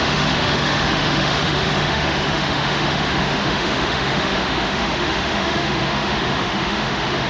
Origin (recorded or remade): remade